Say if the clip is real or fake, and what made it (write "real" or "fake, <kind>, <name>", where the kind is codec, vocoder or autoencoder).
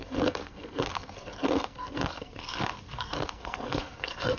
fake, codec, SNAC